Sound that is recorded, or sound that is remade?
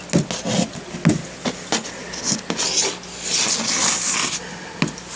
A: recorded